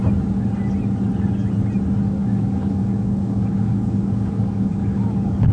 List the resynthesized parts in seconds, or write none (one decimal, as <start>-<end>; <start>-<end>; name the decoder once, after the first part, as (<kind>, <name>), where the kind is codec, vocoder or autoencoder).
2.2-5.5 (codec, DAC)